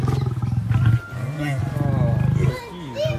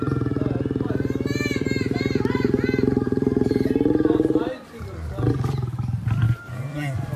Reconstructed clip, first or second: second